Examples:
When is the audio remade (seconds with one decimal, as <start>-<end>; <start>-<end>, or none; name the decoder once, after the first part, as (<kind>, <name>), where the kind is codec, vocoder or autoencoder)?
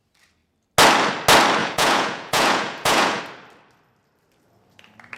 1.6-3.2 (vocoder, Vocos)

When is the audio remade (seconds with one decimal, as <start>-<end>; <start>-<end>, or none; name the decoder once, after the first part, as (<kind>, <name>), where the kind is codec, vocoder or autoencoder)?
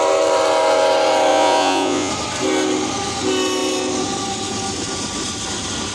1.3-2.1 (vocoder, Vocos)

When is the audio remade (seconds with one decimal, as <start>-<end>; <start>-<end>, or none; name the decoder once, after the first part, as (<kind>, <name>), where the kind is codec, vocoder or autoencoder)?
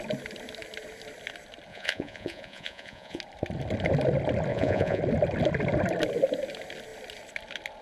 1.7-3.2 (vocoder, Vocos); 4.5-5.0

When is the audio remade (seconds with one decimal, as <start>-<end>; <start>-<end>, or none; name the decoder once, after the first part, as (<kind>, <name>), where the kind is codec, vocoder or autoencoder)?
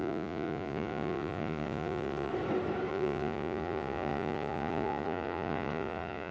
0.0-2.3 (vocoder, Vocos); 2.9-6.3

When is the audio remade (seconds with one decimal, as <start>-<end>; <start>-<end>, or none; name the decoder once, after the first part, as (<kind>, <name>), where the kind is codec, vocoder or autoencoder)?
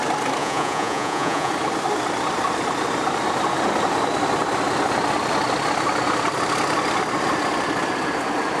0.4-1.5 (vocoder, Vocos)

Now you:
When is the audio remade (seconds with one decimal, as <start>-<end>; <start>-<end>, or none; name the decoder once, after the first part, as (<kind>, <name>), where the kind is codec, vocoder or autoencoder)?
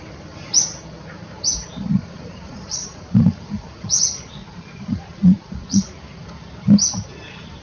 2.0-4.0 (vocoder, Vocos); 4.4-5.8